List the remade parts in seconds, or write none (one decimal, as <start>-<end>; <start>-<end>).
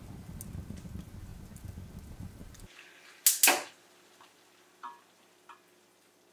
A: none